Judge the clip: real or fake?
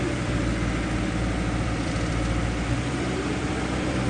fake